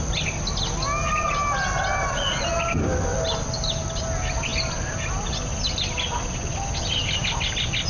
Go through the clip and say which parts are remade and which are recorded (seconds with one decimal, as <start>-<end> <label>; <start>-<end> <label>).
0.0-7.9 recorded